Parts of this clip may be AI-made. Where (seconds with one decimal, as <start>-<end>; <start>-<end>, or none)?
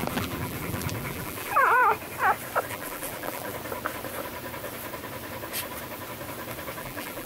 0.0-1.8; 2.7-3.5; 6.8-7.3